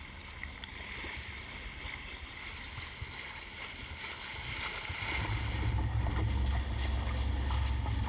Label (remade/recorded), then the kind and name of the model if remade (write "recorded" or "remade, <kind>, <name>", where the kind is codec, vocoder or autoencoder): recorded